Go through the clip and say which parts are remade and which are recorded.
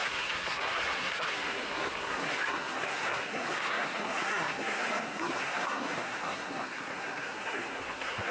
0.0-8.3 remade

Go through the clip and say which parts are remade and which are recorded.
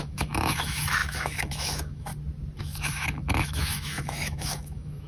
0.0-2.1 remade; 2.1-2.6 recorded; 2.6-5.1 remade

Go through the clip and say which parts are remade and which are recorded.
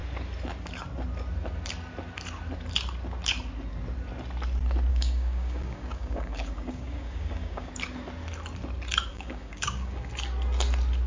0.0-4.9 recorded; 4.9-7.7 remade; 7.7-9.1 recorded; 9.1-10.1 remade; 10.1-11.1 recorded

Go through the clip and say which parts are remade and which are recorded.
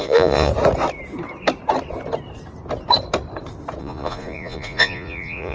0.0-0.5 remade; 0.5-3.8 recorded; 3.8-5.5 remade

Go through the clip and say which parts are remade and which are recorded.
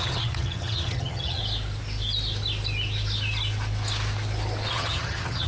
0.0-1.4 remade; 1.4-4.7 recorded; 4.7-5.5 remade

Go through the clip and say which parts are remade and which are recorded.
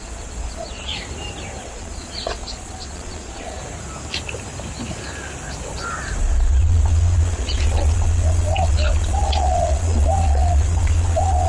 0.0-0.9 remade; 0.9-1.6 recorded; 1.6-3.6 remade; 3.6-6.2 recorded; 6.2-11.5 remade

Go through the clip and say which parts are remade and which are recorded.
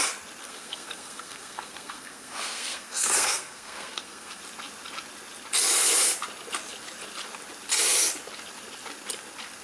0.0-0.4 recorded; 0.4-4.4 remade; 4.4-9.6 recorded